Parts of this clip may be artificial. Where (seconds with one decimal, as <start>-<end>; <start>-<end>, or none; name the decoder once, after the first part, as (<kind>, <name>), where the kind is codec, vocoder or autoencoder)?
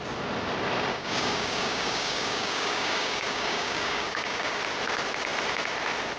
0.9-4.6 (codec, DAC)